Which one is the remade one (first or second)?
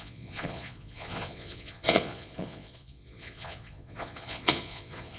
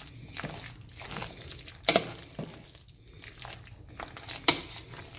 first